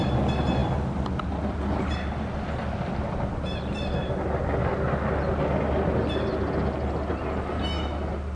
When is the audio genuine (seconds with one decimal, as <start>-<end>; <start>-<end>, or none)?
0.0-8.4